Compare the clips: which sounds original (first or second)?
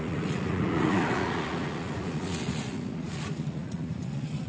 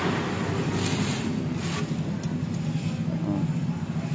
second